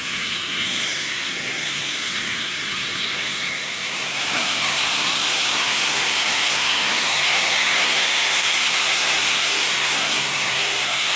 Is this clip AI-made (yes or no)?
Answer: yes